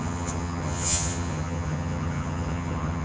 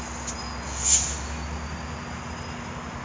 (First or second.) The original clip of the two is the second